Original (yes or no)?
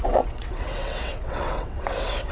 no